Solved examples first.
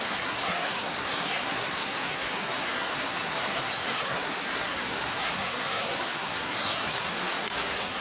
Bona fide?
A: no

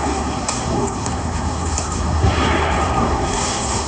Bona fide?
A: no